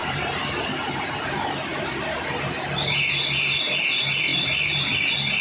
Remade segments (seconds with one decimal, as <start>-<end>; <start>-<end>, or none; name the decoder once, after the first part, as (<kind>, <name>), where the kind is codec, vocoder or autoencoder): 0.0-1.1 (vocoder, BigVGAN v2); 1.7-2.6; 4.3-5.4